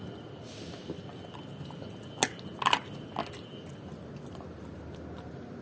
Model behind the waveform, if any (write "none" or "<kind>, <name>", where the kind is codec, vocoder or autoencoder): none